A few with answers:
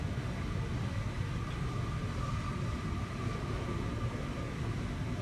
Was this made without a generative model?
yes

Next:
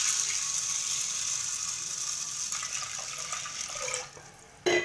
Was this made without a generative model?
yes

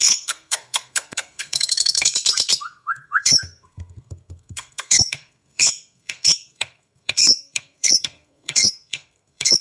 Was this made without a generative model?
no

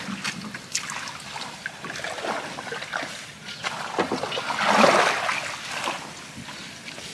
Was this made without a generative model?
yes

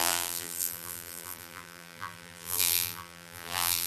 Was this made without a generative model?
no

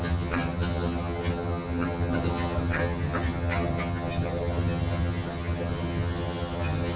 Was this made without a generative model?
no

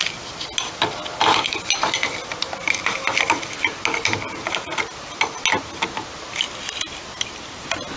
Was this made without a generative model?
yes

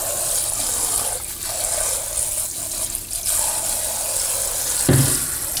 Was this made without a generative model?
yes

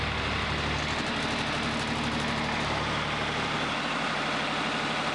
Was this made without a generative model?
yes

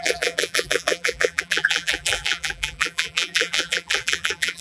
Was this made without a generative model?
no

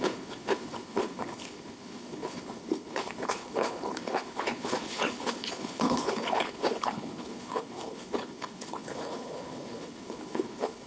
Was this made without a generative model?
no